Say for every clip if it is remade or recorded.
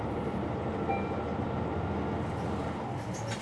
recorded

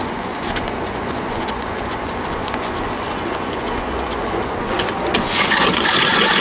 remade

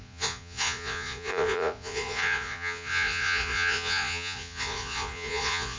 remade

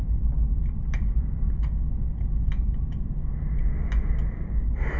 recorded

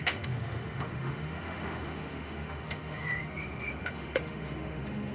remade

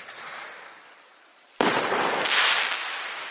recorded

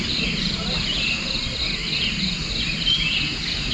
recorded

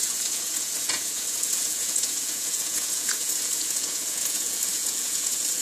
remade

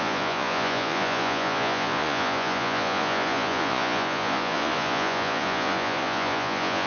remade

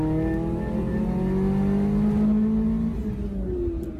recorded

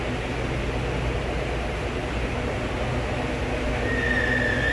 recorded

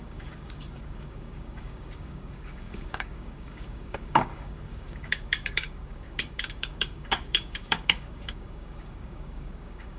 remade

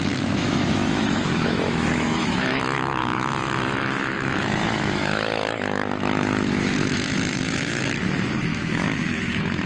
remade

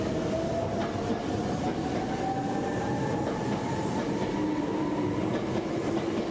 recorded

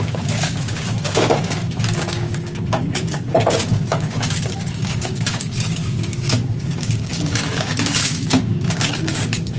remade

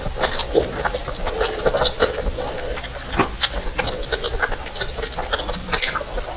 recorded